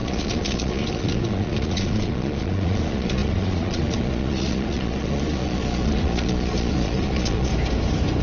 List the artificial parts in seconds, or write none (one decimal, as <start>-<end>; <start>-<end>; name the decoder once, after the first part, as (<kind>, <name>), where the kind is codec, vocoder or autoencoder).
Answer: 0.0-7.5 (vocoder, Vocos)